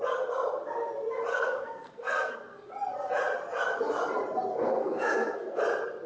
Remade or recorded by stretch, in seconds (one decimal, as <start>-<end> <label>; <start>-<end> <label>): 0.0-1.3 recorded; 1.3-2.7 remade; 2.7-4.5 recorded; 4.5-5.6 remade; 5.6-6.1 recorded